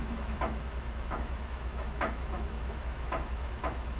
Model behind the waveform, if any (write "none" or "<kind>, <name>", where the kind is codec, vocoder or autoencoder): autoencoder, DAC-VAE